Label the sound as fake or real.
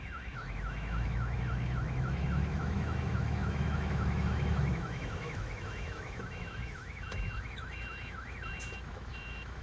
fake